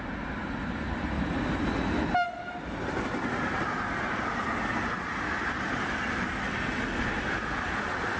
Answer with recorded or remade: recorded